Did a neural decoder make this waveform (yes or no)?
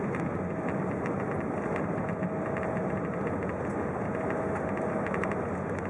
no